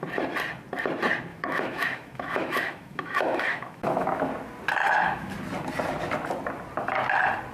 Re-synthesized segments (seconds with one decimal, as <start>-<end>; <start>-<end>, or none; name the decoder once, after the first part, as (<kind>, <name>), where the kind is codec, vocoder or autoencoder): 1.3-4.3 (autoencoder, DAC-VAE); 4.8-5.3